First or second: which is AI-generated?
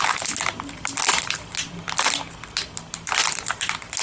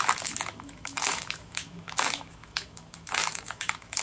second